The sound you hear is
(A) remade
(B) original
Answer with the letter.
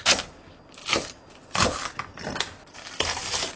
B